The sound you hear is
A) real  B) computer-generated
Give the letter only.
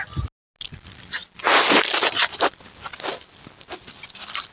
A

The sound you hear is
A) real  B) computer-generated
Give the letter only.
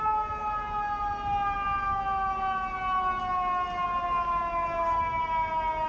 A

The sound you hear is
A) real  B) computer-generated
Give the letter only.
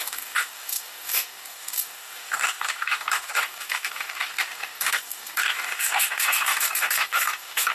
B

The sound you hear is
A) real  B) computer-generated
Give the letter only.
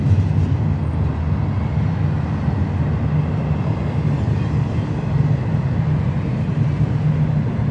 A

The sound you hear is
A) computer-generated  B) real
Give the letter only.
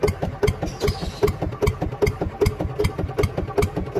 B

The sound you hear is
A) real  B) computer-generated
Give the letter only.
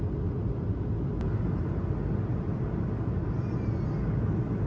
A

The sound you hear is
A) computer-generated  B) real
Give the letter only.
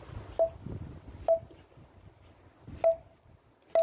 B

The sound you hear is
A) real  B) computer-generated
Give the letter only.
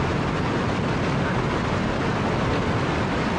A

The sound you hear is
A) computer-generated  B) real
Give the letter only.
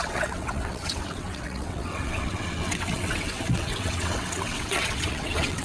A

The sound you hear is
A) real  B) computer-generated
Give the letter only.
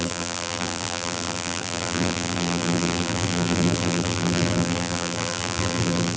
B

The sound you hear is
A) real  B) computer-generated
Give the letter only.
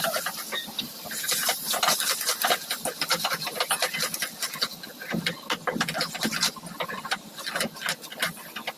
A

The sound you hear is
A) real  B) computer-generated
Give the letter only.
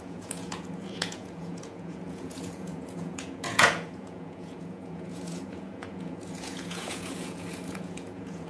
B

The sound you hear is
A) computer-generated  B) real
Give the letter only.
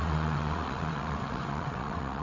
A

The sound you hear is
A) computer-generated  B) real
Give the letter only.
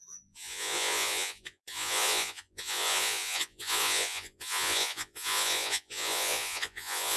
A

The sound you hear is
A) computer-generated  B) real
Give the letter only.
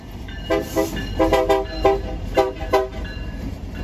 A